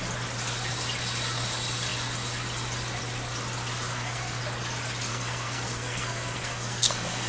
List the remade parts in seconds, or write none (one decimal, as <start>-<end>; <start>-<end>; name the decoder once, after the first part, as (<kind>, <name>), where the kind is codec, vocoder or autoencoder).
3.9-4.4 (codec, SNAC); 5.1-7.3